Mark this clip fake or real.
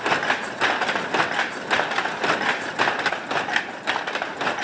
real